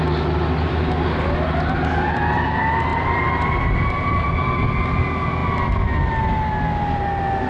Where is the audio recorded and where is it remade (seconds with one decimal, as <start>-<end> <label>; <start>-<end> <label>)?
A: 0.0-2.9 recorded; 2.9-4.4 remade; 4.4-7.5 recorded